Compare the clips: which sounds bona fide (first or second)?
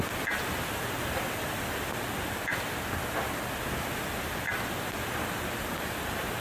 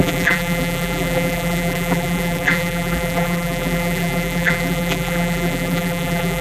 first